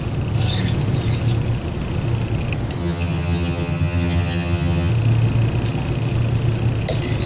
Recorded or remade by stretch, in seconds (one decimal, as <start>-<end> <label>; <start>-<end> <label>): 0.0-2.8 recorded; 2.8-4.9 remade; 4.9-7.3 recorded

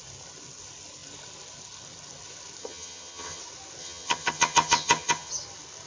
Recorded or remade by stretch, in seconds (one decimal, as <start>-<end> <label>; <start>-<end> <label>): 0.0-2.6 recorded; 2.6-3.4 remade; 3.4-3.8 recorded; 3.8-5.3 remade; 5.3-5.9 recorded

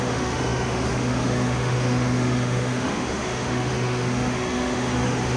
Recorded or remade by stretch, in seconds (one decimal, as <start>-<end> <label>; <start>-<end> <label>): 0.0-5.4 remade

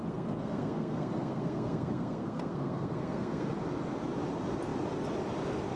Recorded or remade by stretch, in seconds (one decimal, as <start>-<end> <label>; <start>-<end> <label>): 0.0-3.5 remade; 3.5-5.8 recorded

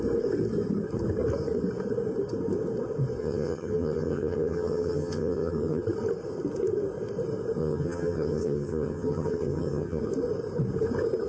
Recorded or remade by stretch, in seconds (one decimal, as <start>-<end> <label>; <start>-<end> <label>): 0.0-3.2 recorded; 3.2-5.8 remade; 5.8-7.6 recorded; 7.6-10.0 remade; 10.0-11.3 recorded